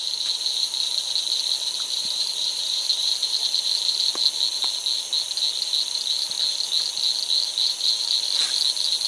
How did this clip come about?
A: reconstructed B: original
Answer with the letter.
B